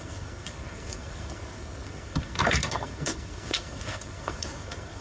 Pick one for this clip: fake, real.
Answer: fake